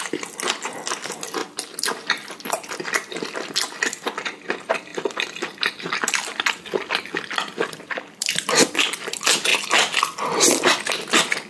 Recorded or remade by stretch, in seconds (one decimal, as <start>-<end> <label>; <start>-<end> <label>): 0.0-4.9 recorded; 4.9-8.8 remade; 8.8-11.5 recorded